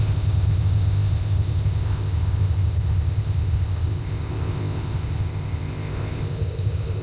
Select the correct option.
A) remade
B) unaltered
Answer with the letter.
A